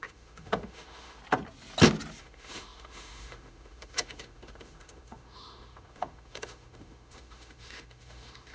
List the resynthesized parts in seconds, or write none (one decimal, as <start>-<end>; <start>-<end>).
0.0-1.2; 2.2-8.5